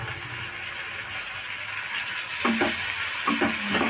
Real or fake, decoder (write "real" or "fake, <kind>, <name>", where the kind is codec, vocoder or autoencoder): real